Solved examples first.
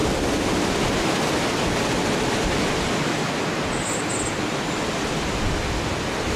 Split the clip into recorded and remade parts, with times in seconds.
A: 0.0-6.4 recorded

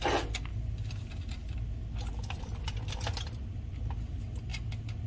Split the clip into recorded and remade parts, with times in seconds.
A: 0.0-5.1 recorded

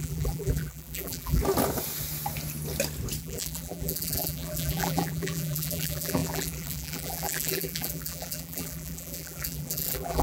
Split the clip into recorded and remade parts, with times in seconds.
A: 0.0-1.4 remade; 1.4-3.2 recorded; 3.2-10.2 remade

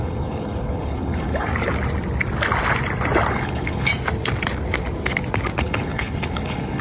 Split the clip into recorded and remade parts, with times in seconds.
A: 0.0-1.5 remade; 1.5-3.3 recorded; 3.3-3.9 remade; 3.9-5.6 recorded; 5.6-6.8 remade